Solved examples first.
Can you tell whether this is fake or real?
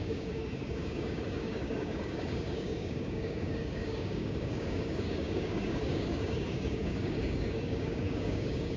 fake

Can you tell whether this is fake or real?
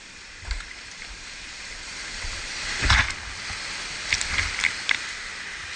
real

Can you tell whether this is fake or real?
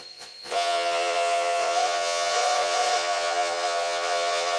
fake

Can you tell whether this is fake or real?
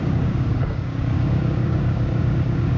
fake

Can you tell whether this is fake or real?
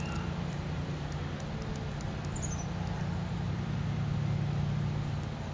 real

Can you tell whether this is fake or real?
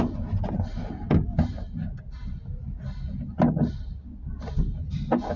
real